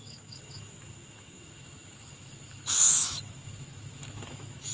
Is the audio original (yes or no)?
no